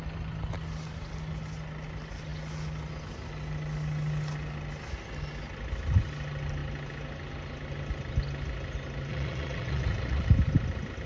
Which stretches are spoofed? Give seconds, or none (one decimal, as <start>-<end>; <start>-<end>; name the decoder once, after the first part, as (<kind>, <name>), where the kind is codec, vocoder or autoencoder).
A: 9.1-10.3 (vocoder, Vocos)